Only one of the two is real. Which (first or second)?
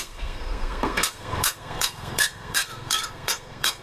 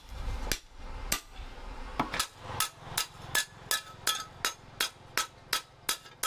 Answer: second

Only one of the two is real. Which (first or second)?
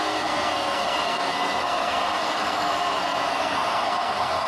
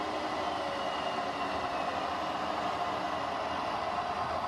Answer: second